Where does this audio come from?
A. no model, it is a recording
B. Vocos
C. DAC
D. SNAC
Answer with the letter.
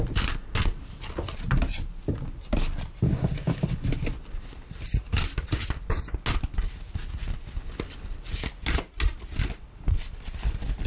A